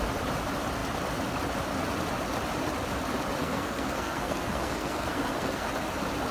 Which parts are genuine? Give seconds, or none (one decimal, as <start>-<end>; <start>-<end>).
0.0-3.4; 5.7-6.3